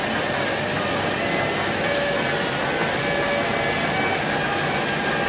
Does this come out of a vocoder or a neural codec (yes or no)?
no